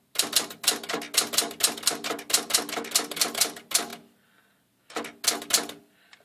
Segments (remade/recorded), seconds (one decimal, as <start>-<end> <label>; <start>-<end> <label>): 0.0-6.2 recorded